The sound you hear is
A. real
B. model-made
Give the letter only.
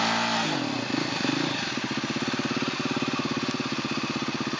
A